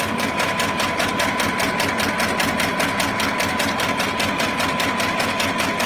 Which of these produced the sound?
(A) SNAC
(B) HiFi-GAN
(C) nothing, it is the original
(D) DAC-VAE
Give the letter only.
C